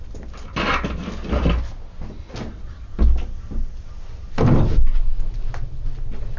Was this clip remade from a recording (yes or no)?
no